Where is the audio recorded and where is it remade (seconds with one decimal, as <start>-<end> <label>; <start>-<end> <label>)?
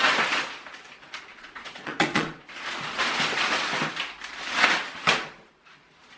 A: 0.0-1.3 recorded; 1.3-2.4 remade; 2.4-6.2 recorded